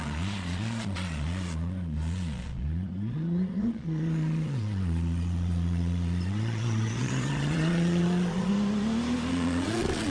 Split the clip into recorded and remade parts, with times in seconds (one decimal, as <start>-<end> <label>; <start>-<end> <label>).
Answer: 0.0-8.5 remade; 8.5-9.3 recorded; 9.3-10.1 remade